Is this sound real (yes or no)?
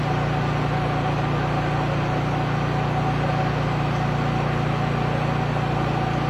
yes